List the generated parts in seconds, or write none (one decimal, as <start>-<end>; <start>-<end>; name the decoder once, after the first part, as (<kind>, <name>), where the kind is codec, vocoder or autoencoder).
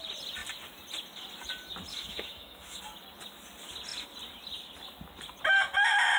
1.9-2.8 (autoencoder, DAC-VAE)